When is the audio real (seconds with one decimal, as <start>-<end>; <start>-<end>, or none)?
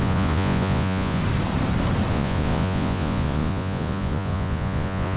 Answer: 1.2-2.1